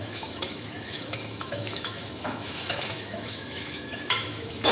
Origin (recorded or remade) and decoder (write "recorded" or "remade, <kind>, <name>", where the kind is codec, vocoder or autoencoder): remade, autoencoder, DAC-VAE